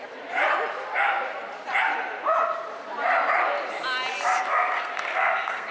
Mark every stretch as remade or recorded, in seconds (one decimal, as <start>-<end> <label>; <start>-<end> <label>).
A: 0.0-4.5 recorded; 4.5-5.7 remade